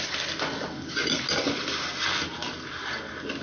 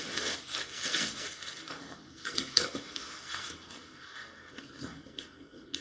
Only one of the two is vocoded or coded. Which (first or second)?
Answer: second